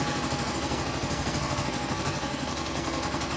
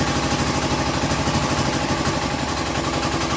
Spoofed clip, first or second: first